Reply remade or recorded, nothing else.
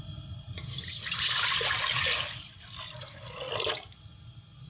recorded